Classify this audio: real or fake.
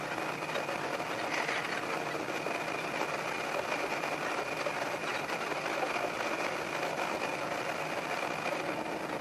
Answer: real